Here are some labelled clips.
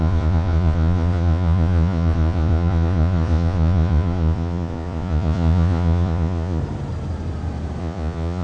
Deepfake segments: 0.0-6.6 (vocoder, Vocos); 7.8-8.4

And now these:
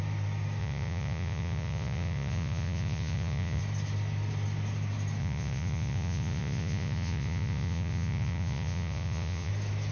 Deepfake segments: 0.6-3.6 (vocoder, Vocos); 5.2-9.5

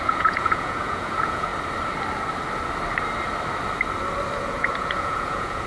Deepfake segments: 0.0-1.5 (vocoder, Vocos); 4.4-5.7

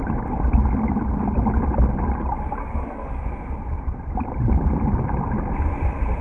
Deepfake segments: 2.6-3.2 (codec, SNAC)

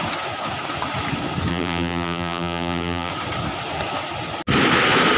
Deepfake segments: 1.5-3.1 (vocoder, BigVGAN v2)

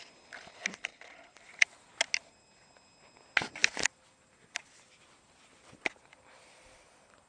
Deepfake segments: none

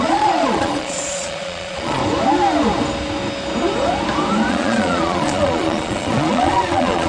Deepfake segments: 0.0-2.0 (vocoder, Vocos); 4.5-7.1